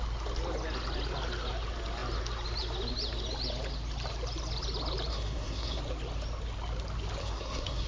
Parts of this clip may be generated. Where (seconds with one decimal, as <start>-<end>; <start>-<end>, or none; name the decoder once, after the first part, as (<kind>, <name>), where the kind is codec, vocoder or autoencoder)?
5.1-5.8 (codec, SNAC); 7.2-7.9